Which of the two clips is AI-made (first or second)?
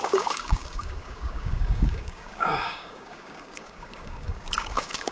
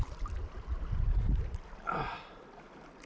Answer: first